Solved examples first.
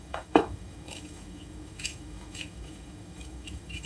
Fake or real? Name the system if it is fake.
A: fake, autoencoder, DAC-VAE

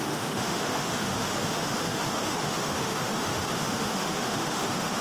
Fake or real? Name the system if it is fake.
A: fake, autoencoder, DAC-VAE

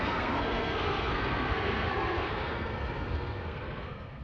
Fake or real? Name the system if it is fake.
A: fake, codec, SNAC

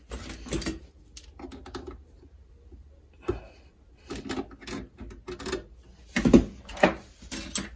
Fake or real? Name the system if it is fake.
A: real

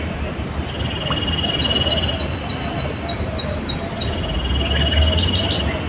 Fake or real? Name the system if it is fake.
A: real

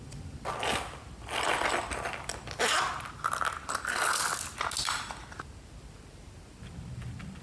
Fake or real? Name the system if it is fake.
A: real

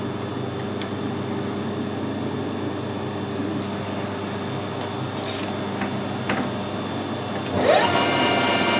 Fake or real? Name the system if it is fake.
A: real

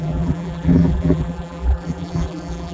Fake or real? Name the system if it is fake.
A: fake, vocoder, BigVGAN v2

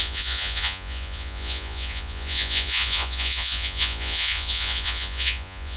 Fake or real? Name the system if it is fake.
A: fake, vocoder, Vocos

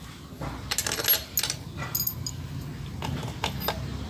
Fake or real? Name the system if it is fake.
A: real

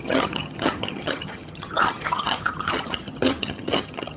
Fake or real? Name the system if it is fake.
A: fake, vocoder, HiFi-GAN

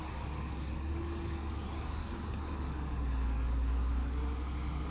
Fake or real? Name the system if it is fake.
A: fake, codec, DAC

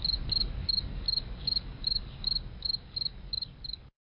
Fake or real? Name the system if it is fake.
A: fake, codec, DAC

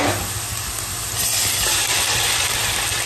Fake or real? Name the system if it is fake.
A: real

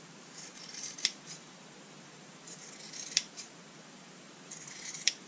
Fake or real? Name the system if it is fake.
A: fake, vocoder, BigVGAN v2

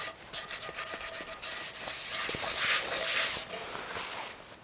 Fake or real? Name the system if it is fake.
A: real